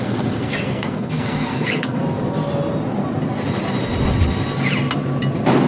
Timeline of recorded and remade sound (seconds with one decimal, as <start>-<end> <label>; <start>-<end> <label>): 0.0-2.0 remade; 2.0-5.7 recorded